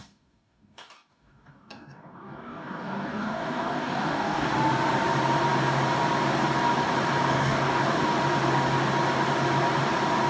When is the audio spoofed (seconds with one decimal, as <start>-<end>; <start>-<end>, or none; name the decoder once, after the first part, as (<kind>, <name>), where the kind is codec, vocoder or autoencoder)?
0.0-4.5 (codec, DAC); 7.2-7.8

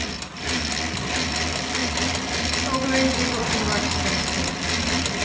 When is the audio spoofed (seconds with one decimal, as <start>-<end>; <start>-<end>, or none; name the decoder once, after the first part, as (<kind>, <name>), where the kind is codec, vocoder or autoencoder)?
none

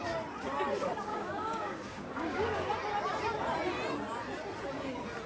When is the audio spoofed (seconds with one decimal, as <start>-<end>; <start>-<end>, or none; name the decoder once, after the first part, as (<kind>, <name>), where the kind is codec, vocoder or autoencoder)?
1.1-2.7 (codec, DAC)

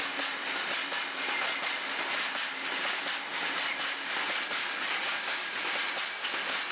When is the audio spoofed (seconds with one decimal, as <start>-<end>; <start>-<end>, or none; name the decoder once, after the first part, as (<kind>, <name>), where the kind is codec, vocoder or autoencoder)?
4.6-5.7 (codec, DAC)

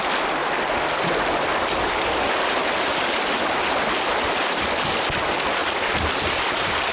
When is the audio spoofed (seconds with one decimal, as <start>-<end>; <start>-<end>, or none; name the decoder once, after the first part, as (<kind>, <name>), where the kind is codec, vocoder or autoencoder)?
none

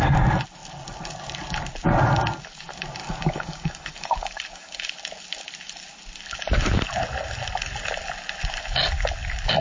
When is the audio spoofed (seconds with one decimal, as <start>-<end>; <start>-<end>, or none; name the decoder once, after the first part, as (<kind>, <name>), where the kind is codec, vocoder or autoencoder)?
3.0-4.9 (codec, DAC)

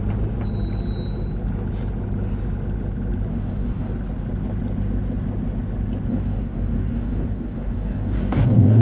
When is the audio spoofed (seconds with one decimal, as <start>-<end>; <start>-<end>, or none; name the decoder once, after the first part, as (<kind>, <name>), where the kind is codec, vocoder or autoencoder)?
3.3-3.9 (codec, DAC); 6.1-8.8